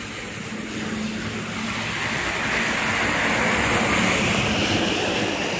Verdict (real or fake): real